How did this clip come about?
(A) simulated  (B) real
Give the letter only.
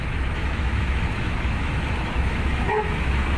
A